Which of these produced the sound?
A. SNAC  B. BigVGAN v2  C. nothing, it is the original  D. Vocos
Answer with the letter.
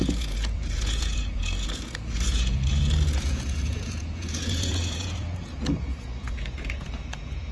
D